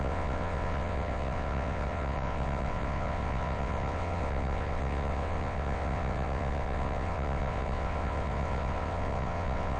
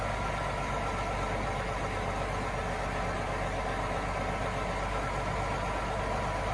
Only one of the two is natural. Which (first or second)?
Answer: second